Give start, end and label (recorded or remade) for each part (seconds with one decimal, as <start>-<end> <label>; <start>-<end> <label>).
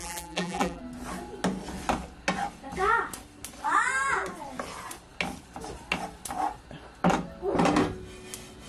0.0-0.8 remade; 0.8-8.7 recorded